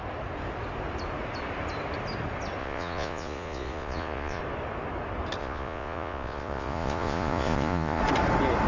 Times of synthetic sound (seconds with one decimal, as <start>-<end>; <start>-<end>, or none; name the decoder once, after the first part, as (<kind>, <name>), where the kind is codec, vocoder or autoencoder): 2.6-4.4 (vocoder, Vocos); 5.4-8.0